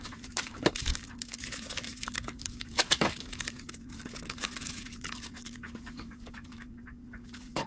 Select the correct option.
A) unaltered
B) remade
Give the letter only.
B